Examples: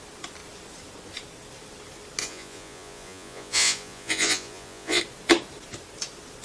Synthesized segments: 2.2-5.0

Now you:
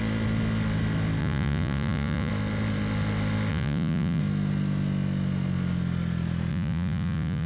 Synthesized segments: 1.2-2.3; 3.5-4.2; 6.5-7.5

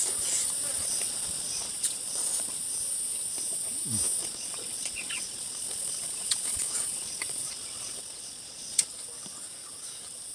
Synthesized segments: 0.7-2.6; 4.2-8.9

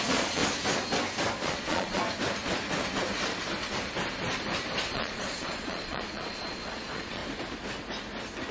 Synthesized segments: 0.0-0.4; 1.4-2.0; 4.8-7.2